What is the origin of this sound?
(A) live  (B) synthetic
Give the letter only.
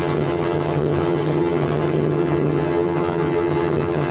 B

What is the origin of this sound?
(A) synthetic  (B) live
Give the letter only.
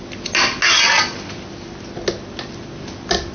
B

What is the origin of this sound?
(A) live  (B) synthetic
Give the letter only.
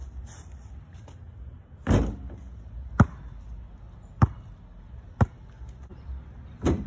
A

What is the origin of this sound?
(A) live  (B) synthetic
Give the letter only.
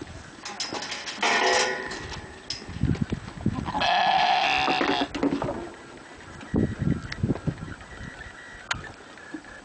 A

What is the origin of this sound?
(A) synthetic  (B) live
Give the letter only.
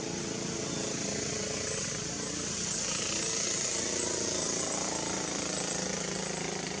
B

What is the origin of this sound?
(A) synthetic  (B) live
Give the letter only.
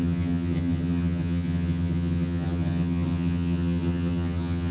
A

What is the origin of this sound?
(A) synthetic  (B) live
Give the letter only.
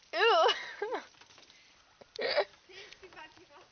B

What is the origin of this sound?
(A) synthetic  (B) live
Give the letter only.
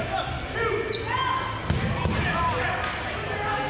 B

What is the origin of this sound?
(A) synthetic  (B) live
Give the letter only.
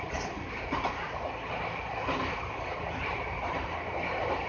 B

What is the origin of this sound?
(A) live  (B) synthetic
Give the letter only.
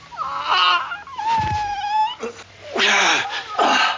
A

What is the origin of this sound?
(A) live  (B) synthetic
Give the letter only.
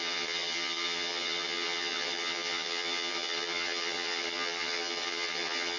B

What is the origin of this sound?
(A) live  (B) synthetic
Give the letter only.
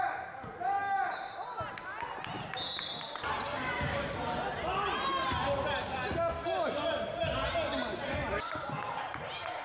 A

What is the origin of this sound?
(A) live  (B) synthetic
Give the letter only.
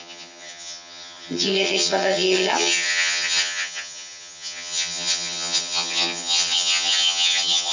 B